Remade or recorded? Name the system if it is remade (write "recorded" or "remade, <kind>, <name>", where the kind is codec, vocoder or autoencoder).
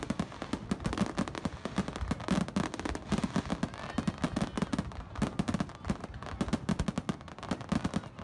recorded